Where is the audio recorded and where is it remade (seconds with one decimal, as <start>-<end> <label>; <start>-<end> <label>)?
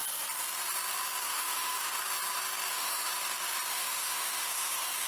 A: 0.0-1.2 recorded; 1.2-2.0 remade; 2.0-2.7 recorded; 2.7-3.1 remade; 3.1-3.7 recorded; 3.7-5.1 remade